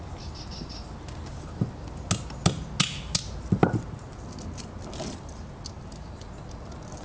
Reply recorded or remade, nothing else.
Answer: recorded